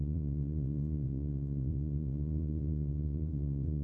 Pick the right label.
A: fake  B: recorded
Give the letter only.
A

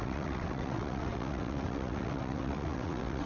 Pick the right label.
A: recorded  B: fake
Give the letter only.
B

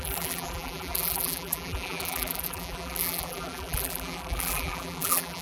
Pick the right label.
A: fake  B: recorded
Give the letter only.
A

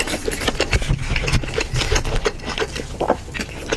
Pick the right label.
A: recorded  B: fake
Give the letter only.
A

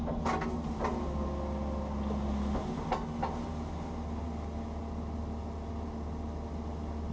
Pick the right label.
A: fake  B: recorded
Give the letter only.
B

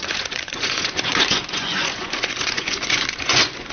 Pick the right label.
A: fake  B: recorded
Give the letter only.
A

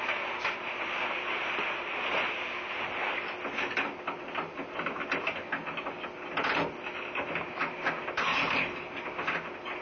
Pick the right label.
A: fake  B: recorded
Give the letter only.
B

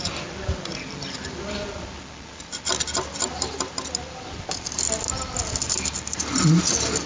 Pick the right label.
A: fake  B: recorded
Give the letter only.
B